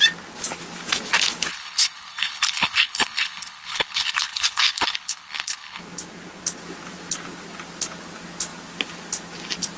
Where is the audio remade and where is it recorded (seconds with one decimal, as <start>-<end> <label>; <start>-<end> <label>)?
0.0-1.5 recorded; 1.5-5.8 remade; 5.8-9.8 recorded